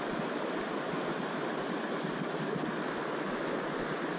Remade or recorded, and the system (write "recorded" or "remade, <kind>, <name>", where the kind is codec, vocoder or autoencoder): recorded